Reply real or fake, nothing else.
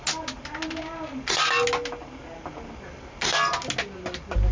real